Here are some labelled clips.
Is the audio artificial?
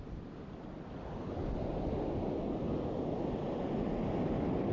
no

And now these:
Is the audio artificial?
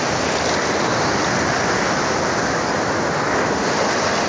no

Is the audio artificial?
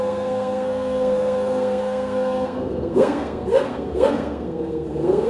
yes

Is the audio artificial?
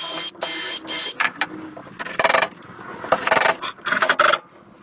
no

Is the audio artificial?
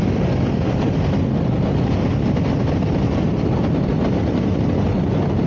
no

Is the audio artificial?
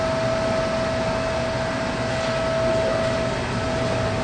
no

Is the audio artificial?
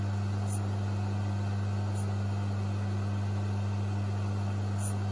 no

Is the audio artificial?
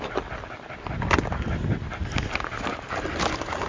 no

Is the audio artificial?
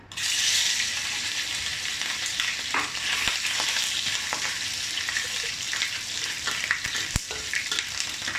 no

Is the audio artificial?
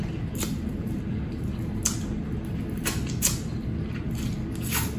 no